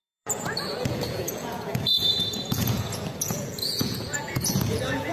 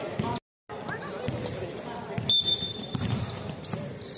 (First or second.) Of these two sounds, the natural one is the second